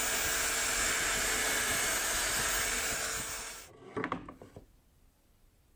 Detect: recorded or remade recorded